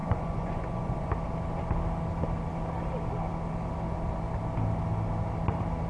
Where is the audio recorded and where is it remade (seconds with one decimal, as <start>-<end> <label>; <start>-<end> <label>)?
0.0-1.1 remade; 1.1-5.9 recorded